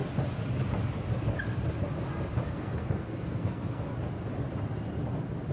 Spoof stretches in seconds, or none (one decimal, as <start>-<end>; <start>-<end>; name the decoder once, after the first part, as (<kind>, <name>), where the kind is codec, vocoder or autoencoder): 2.5-3.9 (codec, SNAC)